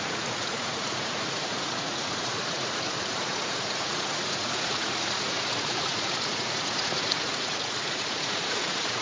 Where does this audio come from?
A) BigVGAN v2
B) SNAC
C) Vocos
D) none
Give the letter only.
C